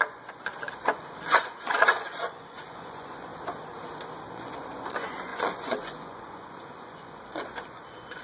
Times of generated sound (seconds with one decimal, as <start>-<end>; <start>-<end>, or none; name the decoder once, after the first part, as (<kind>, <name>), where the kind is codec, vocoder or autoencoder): 0.0-3.3 (vocoder, Vocos); 4.3-8.2